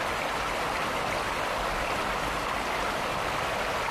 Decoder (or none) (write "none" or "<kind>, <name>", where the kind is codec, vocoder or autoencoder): none